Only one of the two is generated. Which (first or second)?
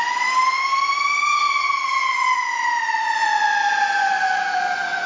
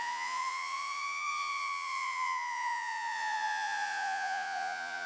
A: second